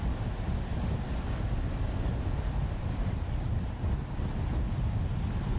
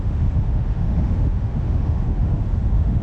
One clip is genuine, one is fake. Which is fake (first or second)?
second